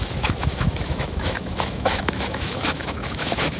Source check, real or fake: fake